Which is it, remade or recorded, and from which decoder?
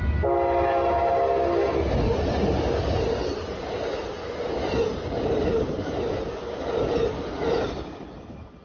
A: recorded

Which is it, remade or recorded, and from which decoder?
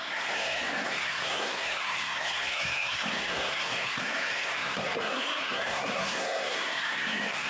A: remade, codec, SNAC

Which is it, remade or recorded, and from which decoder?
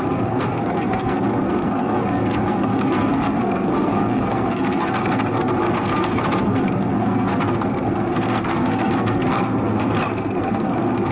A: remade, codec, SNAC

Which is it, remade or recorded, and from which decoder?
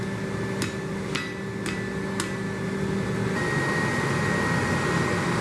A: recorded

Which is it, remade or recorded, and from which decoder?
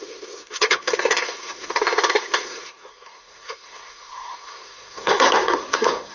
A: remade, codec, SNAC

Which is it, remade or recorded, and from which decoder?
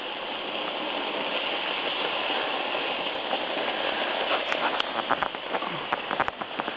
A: recorded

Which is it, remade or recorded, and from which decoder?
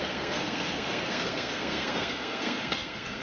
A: remade, codec, SNAC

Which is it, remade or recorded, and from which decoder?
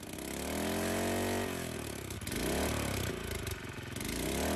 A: recorded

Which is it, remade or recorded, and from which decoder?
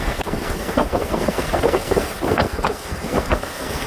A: remade, codec, SNAC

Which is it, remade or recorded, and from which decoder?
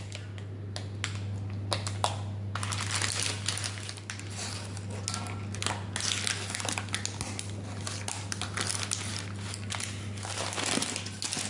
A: recorded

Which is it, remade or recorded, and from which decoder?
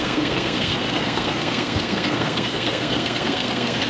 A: remade, codec, SNAC